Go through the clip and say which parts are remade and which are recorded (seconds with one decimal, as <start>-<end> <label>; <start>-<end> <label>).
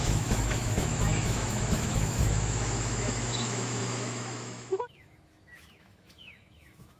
0.0-7.0 remade